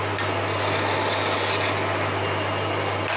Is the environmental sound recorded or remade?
recorded